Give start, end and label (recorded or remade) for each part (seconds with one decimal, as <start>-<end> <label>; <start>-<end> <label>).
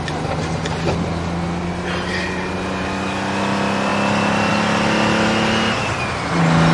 0.0-6.7 recorded